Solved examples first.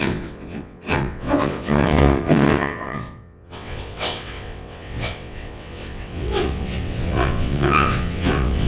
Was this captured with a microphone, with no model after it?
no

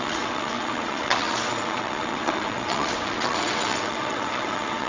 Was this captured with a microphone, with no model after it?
no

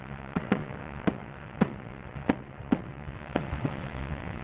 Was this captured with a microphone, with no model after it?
no